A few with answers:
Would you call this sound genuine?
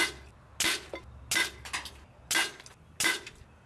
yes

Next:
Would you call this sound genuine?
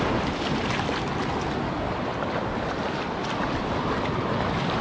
yes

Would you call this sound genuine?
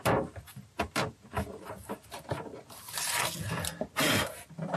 yes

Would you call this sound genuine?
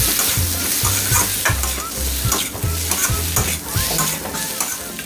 yes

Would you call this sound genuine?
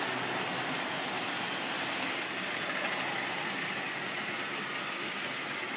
yes